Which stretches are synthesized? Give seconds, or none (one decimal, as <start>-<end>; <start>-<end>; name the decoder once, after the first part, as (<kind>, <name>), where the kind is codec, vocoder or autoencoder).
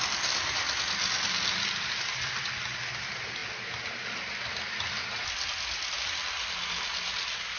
none